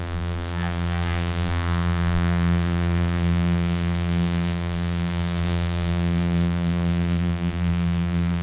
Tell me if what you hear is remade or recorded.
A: remade